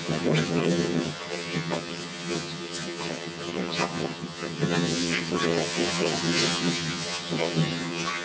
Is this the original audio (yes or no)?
no